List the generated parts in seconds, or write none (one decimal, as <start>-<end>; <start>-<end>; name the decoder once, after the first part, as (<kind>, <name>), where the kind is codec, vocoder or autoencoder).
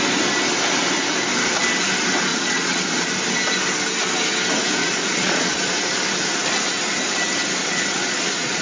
2.3-3.1 (vocoder, Vocos); 4.8-5.7; 7.6-8.6